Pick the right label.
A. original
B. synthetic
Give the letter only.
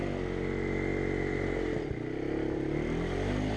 A